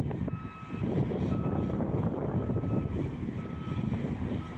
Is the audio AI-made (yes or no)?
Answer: no